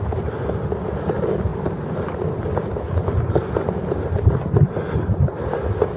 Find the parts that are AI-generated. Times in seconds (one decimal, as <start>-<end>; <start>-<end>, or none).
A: none